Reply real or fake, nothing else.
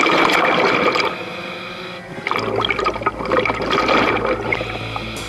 real